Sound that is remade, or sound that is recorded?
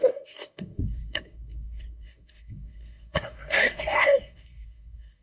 remade